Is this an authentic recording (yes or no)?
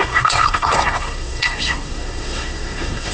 no